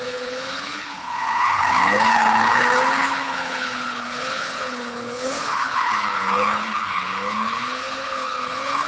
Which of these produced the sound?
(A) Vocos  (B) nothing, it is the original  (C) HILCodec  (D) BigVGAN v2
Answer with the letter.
C